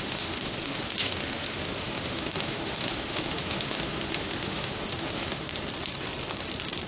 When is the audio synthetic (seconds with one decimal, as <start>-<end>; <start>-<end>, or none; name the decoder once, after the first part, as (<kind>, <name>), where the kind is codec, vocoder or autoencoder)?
0.0-5.5 (autoencoder, DAC-VAE)